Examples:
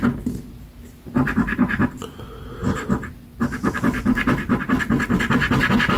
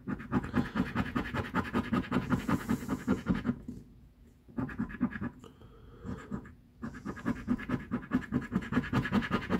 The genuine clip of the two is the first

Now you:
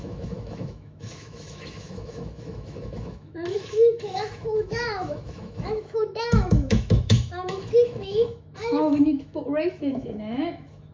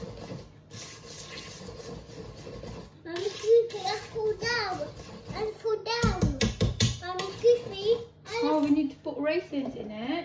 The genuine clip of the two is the second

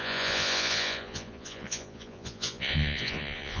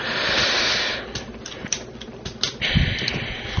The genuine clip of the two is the second